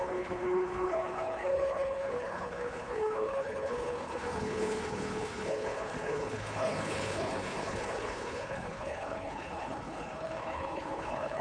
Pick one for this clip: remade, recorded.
remade